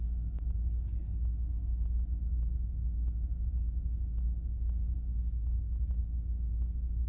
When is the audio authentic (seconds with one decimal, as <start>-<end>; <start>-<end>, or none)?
0.0-7.1